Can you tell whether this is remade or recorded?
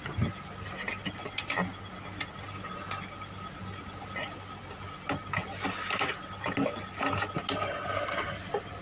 recorded